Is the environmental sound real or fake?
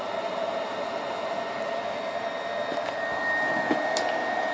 real